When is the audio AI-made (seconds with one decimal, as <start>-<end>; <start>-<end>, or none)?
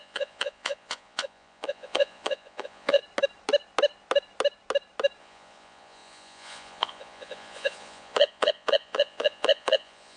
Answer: 0.0-3.0; 5.2-10.2